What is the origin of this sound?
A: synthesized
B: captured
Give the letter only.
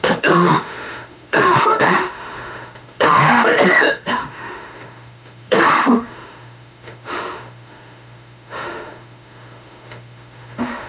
A